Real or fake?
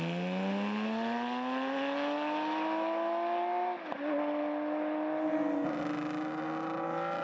real